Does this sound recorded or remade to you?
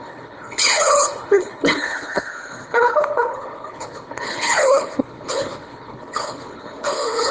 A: remade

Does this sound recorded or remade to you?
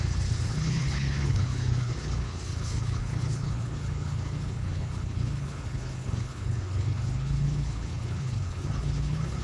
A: remade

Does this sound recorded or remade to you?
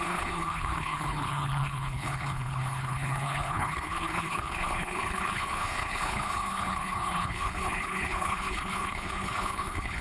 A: remade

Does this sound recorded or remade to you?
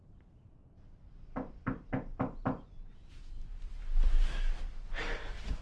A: recorded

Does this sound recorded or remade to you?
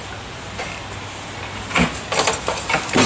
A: recorded